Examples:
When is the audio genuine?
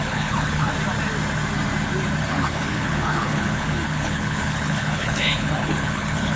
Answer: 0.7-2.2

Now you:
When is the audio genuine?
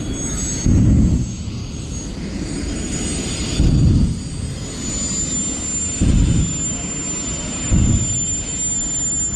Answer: 0.0-9.4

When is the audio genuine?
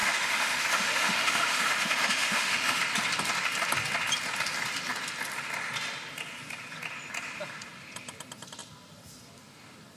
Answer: 2.8-10.0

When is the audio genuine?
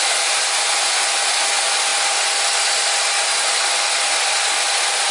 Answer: 0.0-5.1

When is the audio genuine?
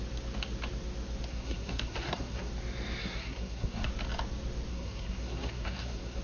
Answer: 0.0-1.3; 2.5-3.0; 3.9-4.7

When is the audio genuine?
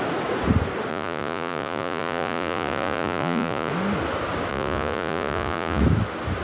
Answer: 0.0-0.9; 3.7-4.5; 5.8-6.4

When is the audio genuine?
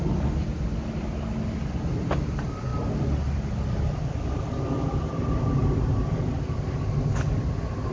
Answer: 0.0-7.9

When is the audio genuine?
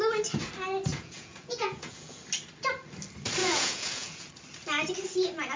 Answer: 0.0-0.9; 2.2-3.4; 4.3-5.6